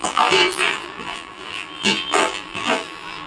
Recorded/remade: remade